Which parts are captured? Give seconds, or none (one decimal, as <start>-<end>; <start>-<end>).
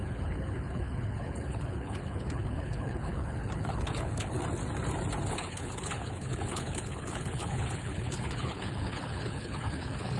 4.4-5.3